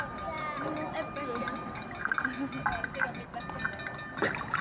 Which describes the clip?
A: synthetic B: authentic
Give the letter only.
B